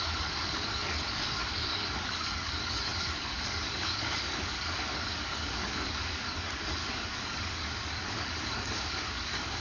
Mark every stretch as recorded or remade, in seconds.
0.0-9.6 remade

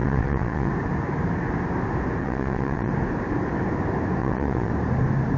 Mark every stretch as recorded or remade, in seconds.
0.0-0.7 remade; 0.7-2.2 recorded; 2.2-2.9 remade; 2.9-4.2 recorded; 4.2-4.7 remade; 4.7-5.4 recorded

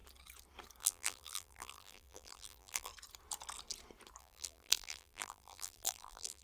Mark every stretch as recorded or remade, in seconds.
0.0-0.8 recorded; 0.8-2.9 remade; 2.9-4.2 recorded; 4.2-6.4 remade